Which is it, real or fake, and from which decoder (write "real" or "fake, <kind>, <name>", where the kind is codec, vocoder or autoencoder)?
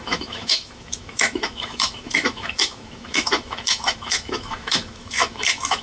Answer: fake, autoencoder, DAC-VAE